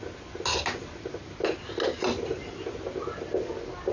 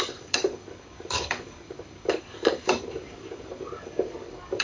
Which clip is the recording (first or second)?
first